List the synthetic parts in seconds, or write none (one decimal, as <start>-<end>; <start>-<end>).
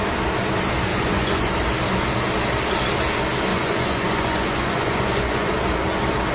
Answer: 0.9-1.5; 3.5-5.5